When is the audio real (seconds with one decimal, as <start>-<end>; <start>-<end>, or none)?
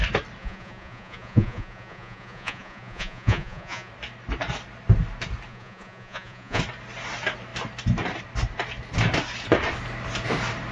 0.0-0.4; 3.9-5.5; 6.6-10.7